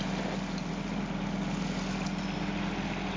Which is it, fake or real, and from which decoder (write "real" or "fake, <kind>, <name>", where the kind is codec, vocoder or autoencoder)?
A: real